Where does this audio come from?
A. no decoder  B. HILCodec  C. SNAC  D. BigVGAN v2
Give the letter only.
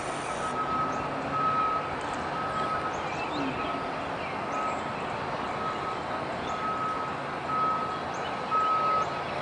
A